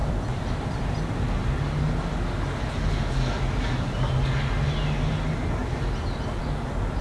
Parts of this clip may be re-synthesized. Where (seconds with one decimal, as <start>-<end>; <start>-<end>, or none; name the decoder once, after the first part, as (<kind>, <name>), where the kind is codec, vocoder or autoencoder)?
0.0-0.9 (vocoder, BigVGAN v2); 5.6-6.4